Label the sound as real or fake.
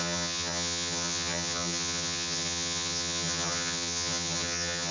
fake